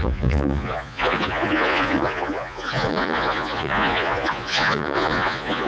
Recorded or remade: remade